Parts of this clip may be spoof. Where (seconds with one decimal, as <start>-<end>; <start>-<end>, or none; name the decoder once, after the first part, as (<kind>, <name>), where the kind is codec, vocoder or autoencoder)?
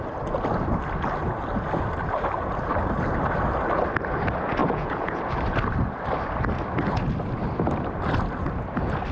4.6-5.2 (vocoder, Vocos)